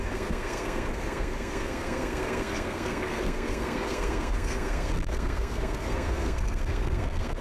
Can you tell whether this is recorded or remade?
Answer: remade